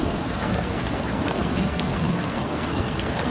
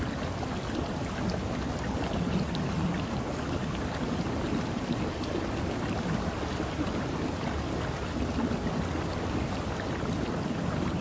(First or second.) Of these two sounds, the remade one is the first